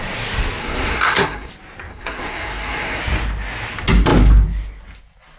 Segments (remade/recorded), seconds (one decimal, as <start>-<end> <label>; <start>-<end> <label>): 0.0-0.6 recorded; 0.6-1.5 remade; 1.5-1.9 recorded; 1.9-3.0 remade; 3.0-5.4 recorded